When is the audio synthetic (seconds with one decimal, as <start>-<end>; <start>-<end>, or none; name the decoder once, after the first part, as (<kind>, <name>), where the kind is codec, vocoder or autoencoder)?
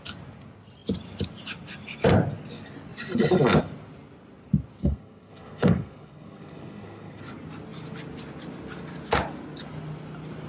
4.8-7.2 (codec, SNAC)